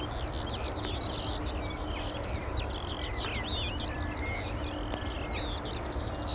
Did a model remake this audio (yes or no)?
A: no